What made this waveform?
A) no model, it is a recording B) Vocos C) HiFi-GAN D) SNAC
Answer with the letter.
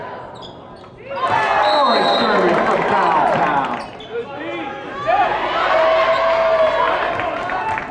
A